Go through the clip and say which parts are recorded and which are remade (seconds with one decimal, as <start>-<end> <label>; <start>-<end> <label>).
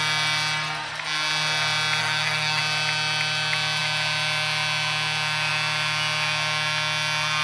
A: 0.0-2.0 recorded; 2.0-2.6 remade; 2.6-7.4 recorded